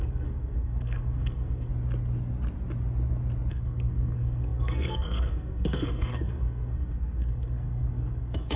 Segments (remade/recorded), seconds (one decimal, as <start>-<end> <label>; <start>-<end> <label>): 0.0-1.7 remade; 1.7-3.5 recorded; 3.5-8.6 remade